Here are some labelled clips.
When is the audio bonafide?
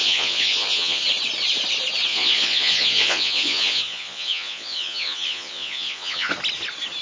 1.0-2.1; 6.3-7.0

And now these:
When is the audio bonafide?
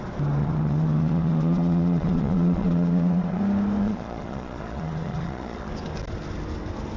0.0-0.4; 3.4-3.8; 5.7-7.0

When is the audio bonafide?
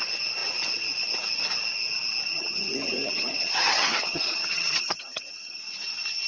0.0-2.3; 5.6-6.3